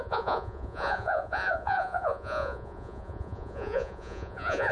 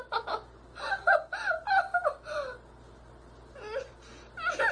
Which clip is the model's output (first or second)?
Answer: first